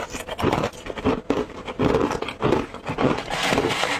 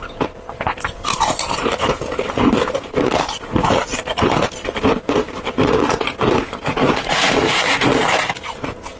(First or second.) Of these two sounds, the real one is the first